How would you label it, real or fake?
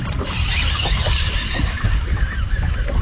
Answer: real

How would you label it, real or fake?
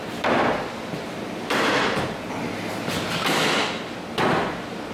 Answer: fake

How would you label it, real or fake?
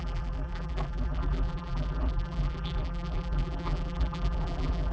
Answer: fake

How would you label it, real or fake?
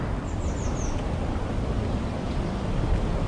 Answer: fake